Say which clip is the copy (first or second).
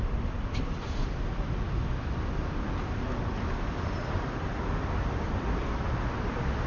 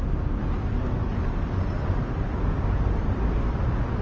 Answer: first